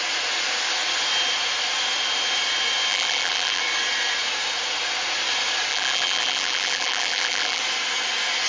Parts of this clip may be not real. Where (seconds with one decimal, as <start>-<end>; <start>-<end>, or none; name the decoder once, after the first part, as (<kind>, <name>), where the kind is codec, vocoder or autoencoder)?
2.9-3.6 (vocoder, BigVGAN v2); 5.7-7.6